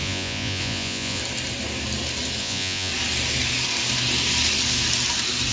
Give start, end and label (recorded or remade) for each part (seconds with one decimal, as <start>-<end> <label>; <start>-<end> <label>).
0.0-1.2 remade; 1.2-2.4 recorded; 2.4-2.9 remade; 2.9-5.5 recorded